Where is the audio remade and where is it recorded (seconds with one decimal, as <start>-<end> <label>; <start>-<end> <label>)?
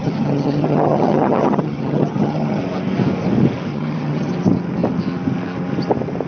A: 0.0-2.6 remade; 2.6-3.7 recorded; 3.7-4.3 remade; 4.3-6.3 recorded